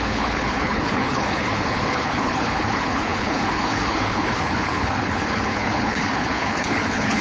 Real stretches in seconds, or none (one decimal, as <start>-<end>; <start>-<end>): none